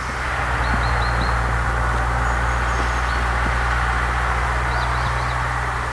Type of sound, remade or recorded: recorded